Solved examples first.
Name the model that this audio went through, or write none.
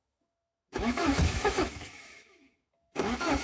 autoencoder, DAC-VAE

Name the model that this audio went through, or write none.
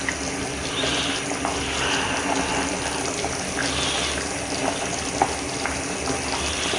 none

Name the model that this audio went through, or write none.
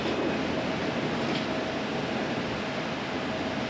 none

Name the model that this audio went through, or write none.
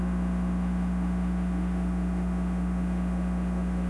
autoencoder, DAC-VAE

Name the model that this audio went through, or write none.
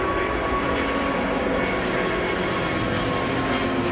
none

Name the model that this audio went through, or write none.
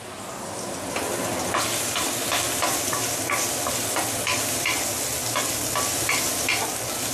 none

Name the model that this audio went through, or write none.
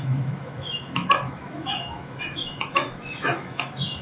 autoencoder, DAC-VAE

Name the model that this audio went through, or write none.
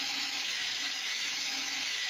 autoencoder, DAC-VAE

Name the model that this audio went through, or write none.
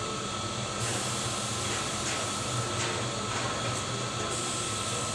none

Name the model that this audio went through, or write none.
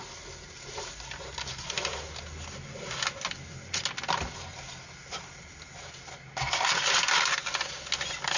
none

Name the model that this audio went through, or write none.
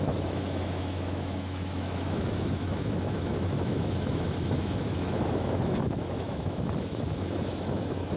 autoencoder, DAC-VAE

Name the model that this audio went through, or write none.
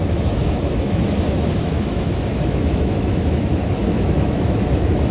autoencoder, DAC-VAE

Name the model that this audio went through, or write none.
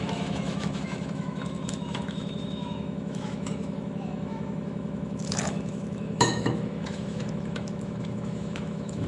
autoencoder, DAC-VAE